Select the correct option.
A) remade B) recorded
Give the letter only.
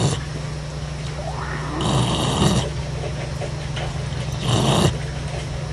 B